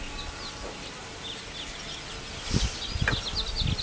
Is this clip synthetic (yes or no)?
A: no